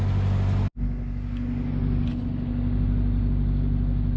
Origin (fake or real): real